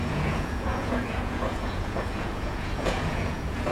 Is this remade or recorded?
remade